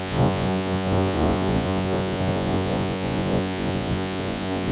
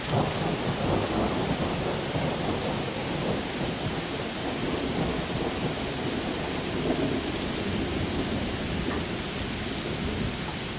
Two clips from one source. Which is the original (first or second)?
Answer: second